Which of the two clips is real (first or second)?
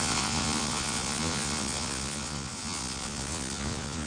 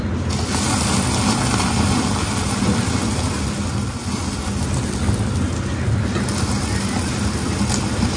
second